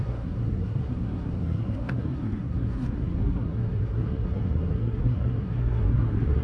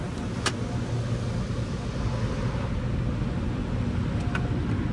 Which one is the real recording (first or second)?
second